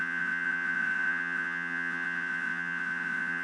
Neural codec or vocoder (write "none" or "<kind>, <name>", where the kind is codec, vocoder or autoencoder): vocoder, WaveNeXt